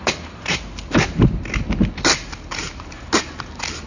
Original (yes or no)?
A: yes